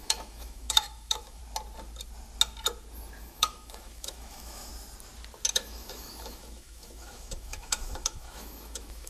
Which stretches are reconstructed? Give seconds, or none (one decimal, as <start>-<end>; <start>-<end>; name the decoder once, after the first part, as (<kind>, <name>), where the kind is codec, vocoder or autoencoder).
0.0-1.4 (autoencoder, DAC-VAE); 3.2-4.7; 5.5-9.1